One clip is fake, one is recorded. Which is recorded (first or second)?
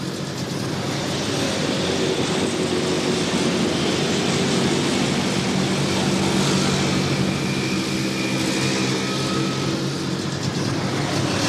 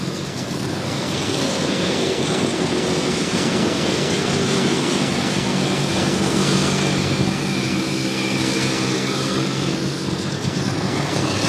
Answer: first